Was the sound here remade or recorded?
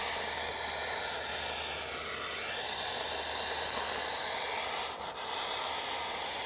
recorded